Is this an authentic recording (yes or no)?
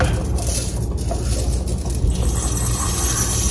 yes